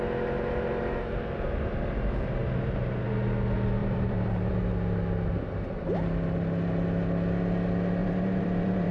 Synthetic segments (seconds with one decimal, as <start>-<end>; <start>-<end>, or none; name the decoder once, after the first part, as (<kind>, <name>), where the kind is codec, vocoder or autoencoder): 3.8-4.5 (vocoder, BigVGAN v2); 8.0-8.9